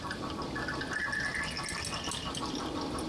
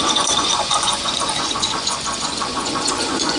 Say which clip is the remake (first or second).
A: second